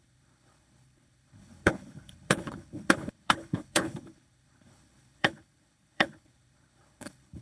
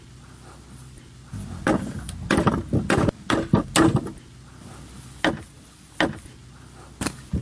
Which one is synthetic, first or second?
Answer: first